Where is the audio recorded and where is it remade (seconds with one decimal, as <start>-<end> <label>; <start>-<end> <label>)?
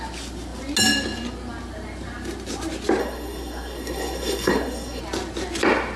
0.0-3.0 recorded; 3.0-5.0 remade; 5.0-6.0 recorded